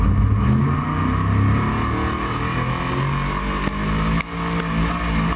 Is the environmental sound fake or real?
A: real